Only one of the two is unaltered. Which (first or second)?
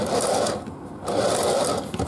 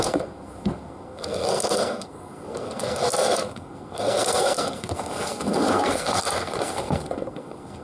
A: first